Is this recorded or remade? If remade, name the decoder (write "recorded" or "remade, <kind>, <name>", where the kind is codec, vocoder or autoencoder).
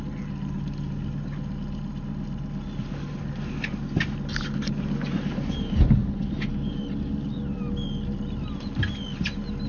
recorded